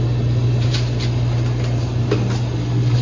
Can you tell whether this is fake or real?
real